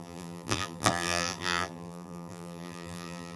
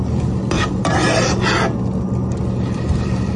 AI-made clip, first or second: first